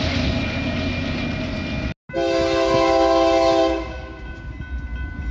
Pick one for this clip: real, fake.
real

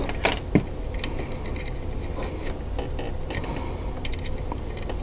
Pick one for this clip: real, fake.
real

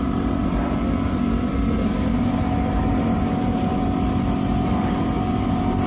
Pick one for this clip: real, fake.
fake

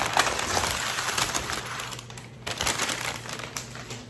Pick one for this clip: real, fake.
fake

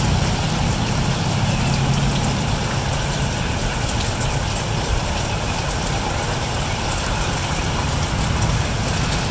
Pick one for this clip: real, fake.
real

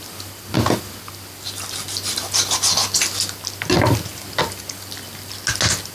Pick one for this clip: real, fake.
real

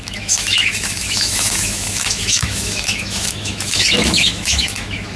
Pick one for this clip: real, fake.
fake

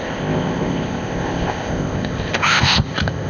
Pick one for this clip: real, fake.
fake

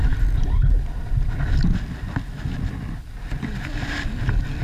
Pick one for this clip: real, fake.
real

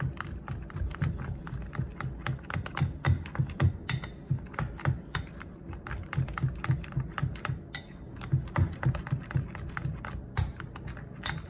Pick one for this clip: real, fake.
real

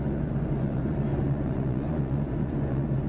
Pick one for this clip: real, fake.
fake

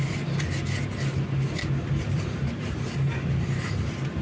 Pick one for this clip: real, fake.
fake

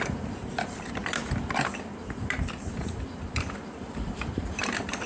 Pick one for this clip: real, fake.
fake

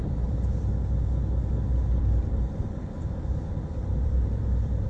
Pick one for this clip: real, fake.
fake